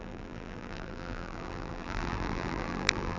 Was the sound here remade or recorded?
remade